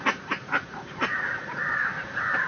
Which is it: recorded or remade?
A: remade